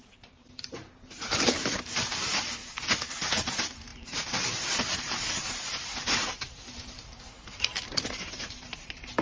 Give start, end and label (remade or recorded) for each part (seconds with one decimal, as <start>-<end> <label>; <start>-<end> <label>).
0.0-2.6 remade; 2.6-3.1 recorded; 3.1-9.2 remade